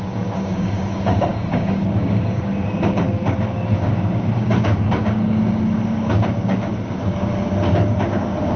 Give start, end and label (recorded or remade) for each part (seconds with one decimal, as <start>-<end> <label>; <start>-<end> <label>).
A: 0.0-7.3 remade; 7.3-8.0 recorded; 8.0-8.6 remade